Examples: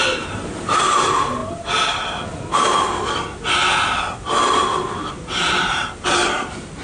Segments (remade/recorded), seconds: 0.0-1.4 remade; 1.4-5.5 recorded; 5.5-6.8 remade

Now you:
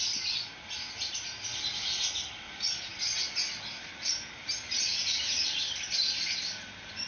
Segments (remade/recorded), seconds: 0.0-7.1 recorded

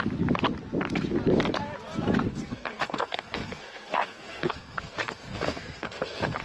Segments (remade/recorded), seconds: 0.0-2.3 recorded; 2.3-6.4 remade

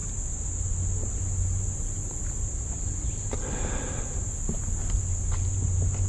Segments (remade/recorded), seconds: 0.0-6.1 recorded

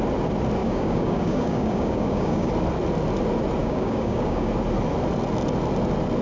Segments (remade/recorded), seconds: 0.0-0.6 recorded; 0.6-2.5 remade; 2.5-3.6 recorded; 3.6-4.5 remade; 4.5-6.2 recorded

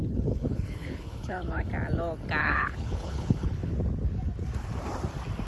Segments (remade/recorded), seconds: 0.0-1.7 remade; 1.7-2.4 recorded; 2.4-3.7 remade; 3.7-5.5 recorded

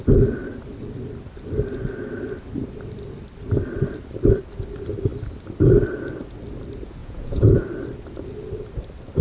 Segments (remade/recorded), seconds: 0.0-7.0 recorded; 7.0-7.6 remade; 7.6-9.2 recorded